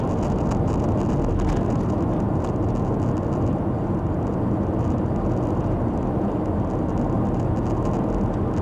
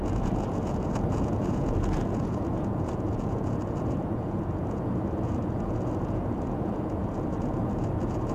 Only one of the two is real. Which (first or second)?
first